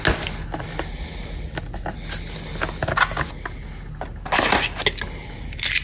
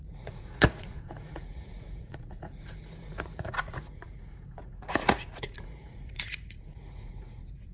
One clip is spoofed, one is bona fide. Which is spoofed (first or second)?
second